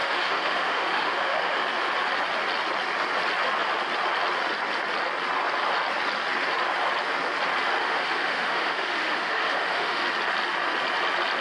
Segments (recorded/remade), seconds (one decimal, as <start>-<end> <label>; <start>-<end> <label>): 0.0-1.6 remade; 1.6-7.8 recorded; 7.8-10.0 remade; 10.0-11.4 recorded